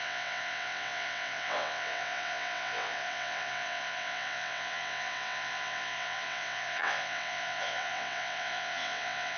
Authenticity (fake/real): fake